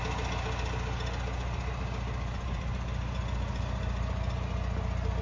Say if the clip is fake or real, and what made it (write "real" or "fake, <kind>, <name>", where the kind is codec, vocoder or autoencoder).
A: real